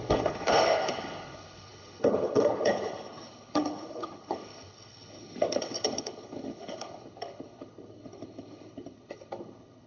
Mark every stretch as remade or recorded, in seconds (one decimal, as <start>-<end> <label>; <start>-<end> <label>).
0.0-9.9 remade